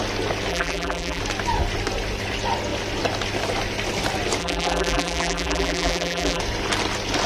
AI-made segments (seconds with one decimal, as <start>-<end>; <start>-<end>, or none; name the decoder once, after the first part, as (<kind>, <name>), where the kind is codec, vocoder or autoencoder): 0.5-1.2 (vocoder, BigVGAN v2); 4.4-6.4